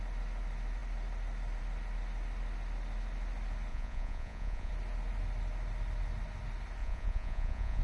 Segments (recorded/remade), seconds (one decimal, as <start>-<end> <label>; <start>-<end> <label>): 0.0-3.7 recorded; 3.7-4.7 remade; 4.7-6.8 recorded; 6.8-7.8 remade